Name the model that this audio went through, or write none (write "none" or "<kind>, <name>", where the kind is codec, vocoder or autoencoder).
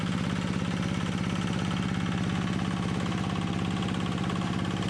none